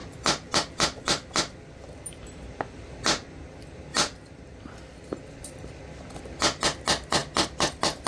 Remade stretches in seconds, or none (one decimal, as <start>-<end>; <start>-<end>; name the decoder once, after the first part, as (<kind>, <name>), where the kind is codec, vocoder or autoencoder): 0.0-3.0 (vocoder, BigVGAN v2); 3.9-6.3; 7.2-8.1